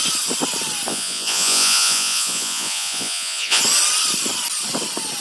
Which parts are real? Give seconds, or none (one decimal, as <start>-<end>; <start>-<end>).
0.0-0.9; 3.6-5.2

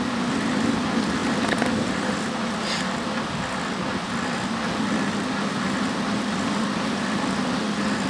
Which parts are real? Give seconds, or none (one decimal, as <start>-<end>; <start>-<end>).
0.0-8.1

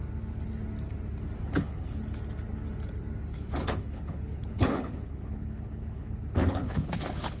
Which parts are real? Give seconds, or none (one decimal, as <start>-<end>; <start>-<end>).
0.0-1.4; 2.0-3.3

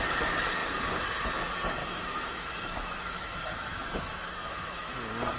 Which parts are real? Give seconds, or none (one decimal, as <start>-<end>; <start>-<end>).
0.0-1.8; 5.0-5.4

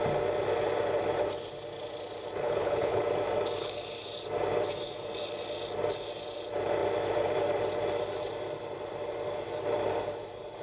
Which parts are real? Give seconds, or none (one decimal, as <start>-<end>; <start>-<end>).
0.0-2.4; 3.0-10.6

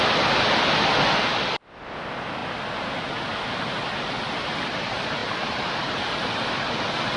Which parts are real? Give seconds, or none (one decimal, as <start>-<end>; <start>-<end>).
0.0-5.2; 6.5-7.2

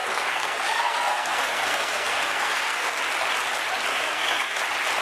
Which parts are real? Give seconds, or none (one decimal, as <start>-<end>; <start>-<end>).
3.0-3.9; 4.6-5.0